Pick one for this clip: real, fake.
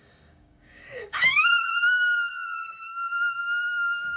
fake